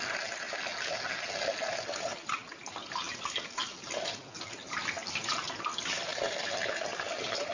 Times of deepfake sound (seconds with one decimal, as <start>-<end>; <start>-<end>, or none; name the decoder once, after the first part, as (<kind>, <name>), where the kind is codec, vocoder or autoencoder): none